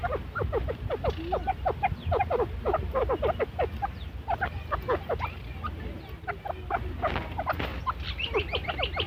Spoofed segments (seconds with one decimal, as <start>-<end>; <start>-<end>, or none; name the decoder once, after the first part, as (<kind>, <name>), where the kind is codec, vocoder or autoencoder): 7.7-8.7 (vocoder, BigVGAN v2)